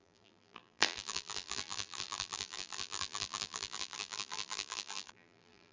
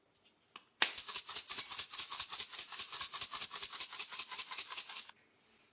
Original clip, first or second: second